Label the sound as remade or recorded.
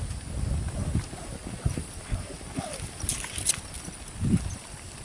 recorded